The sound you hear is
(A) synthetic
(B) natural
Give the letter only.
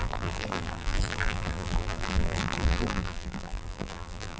A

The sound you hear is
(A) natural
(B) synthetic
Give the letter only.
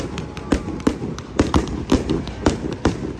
A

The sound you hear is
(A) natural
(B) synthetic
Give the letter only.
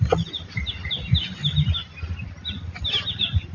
A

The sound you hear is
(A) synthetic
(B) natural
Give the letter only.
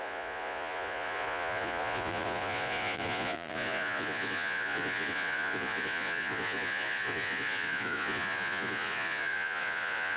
A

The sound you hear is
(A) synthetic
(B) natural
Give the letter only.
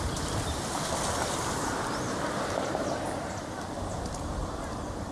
A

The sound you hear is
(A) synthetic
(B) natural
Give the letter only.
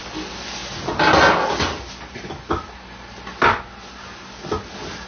B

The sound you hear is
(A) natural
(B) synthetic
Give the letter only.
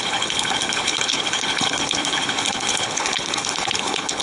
B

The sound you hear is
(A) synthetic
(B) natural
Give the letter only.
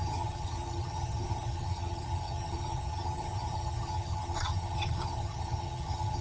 A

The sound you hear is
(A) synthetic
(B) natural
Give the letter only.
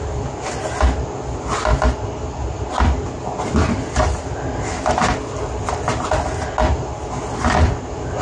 B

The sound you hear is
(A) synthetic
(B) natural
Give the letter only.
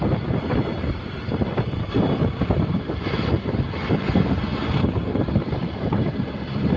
A